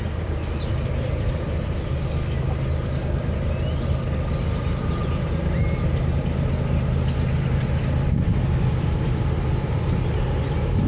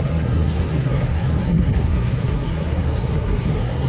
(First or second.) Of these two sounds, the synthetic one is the second